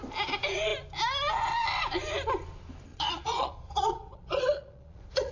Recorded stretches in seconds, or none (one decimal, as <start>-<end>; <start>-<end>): 0.0-2.9